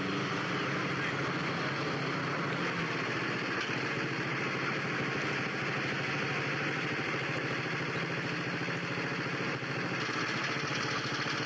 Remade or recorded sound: recorded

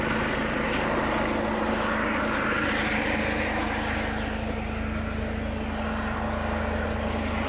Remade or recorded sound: recorded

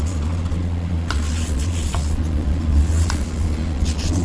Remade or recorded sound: remade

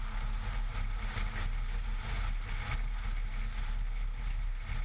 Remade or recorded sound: recorded